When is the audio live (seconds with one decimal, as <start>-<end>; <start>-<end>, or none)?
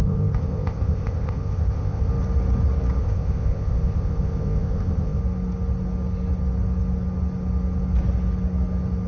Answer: 2.1-3.0; 5.2-9.1